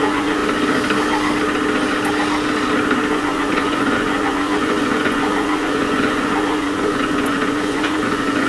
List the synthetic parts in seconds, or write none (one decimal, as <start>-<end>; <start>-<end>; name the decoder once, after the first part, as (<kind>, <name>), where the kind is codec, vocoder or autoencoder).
0.0-0.4 (vocoder, Vocos); 3.1-8.5